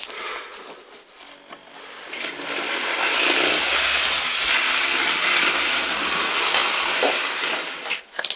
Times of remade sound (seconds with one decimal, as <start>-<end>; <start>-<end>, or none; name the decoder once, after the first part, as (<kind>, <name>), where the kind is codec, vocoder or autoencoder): none